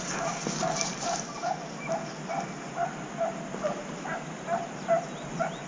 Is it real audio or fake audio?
real